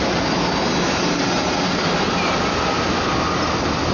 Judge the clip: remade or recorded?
recorded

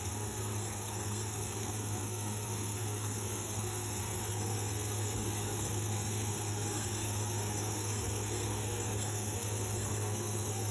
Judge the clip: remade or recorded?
remade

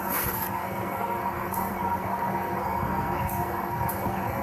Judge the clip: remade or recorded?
remade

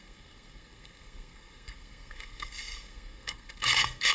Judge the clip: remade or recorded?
remade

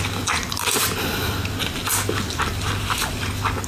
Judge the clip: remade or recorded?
recorded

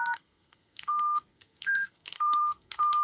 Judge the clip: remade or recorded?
remade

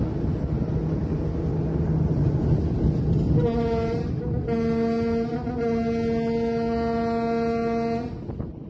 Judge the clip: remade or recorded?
recorded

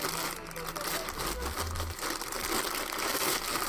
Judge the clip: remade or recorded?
recorded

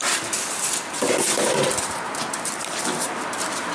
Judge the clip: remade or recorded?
recorded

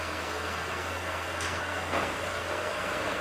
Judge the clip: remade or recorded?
remade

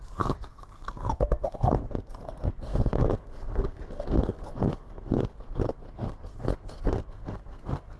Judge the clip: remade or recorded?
remade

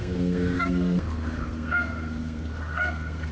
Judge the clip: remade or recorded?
remade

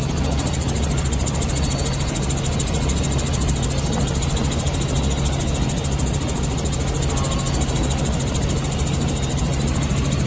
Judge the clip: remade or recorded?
recorded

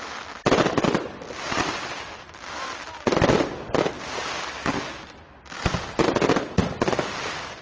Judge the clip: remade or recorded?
recorded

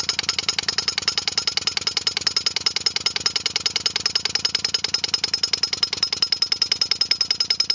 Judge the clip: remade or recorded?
recorded